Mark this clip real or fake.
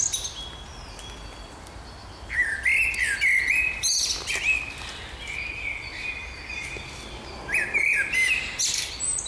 real